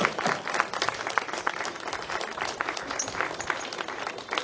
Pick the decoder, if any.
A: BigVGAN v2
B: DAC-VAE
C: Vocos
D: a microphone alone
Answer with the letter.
D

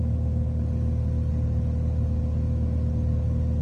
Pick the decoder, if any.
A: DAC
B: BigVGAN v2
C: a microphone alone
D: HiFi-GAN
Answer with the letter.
C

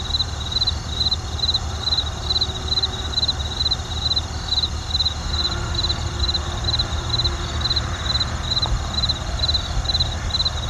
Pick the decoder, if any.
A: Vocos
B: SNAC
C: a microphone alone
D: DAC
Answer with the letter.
C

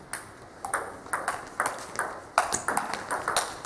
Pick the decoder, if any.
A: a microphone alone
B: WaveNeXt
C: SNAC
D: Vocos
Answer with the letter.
A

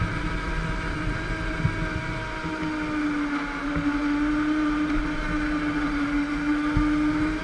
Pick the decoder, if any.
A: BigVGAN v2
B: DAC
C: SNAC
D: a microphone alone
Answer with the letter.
D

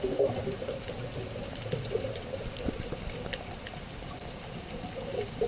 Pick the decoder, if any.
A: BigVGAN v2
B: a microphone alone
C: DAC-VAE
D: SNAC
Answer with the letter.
A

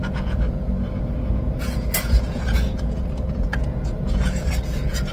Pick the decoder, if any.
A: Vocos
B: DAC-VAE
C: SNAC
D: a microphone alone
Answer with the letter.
A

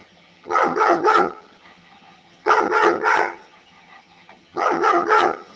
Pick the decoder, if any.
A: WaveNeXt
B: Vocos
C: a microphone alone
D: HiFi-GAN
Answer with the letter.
D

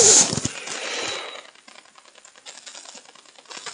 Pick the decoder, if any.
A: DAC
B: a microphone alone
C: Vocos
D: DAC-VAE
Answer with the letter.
B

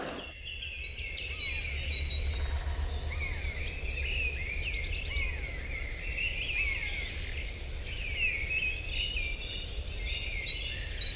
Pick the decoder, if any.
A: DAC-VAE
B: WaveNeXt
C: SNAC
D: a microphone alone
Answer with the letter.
D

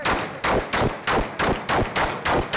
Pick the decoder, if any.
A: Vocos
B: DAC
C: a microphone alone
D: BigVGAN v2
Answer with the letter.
C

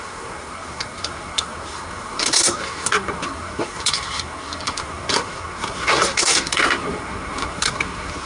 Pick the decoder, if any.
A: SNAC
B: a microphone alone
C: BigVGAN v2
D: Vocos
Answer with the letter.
A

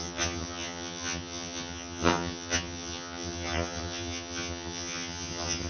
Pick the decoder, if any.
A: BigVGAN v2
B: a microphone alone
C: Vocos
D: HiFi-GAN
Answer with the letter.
D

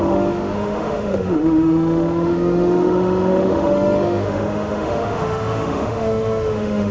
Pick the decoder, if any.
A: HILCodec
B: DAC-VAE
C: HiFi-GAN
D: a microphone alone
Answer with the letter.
B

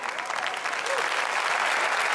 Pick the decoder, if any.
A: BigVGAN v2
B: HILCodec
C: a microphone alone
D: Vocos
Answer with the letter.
C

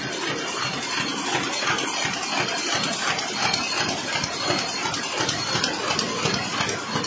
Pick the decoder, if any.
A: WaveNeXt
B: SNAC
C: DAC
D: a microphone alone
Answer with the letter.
D